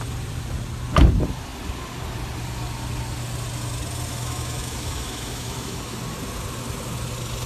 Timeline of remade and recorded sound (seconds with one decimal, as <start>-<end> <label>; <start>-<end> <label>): 0.0-4.1 recorded; 4.1-6.0 remade; 6.0-7.5 recorded